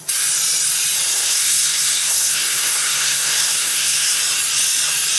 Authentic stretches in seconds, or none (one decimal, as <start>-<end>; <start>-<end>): 0.0-1.1; 4.2-5.2